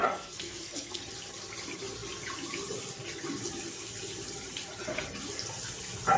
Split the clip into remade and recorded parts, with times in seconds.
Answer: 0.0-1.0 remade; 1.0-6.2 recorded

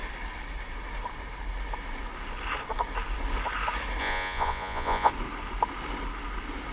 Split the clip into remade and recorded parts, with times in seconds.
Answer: 0.0-4.0 recorded; 4.0-5.1 remade; 5.1-6.7 recorded

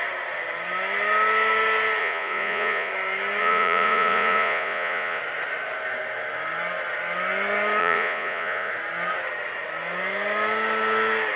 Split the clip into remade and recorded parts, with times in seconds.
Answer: 0.0-2.0 recorded; 2.0-2.9 remade; 2.9-3.4 recorded; 3.4-5.2 remade; 5.2-7.8 recorded; 7.8-8.7 remade; 8.7-11.4 recorded

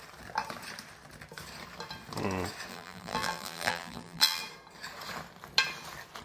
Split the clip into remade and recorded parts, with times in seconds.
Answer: 0.0-2.7 recorded; 2.7-4.4 remade; 4.4-6.2 recorded

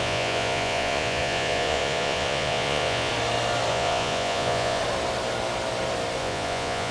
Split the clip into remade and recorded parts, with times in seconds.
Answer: 0.0-3.1 remade; 3.1-3.7 recorded; 3.7-4.8 remade; 4.8-6.2 recorded; 6.2-6.9 remade